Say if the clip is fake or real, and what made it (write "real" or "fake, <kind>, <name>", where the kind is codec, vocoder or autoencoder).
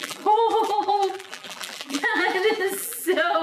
fake, vocoder, BigVGAN v2